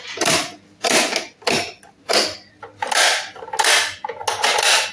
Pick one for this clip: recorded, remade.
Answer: recorded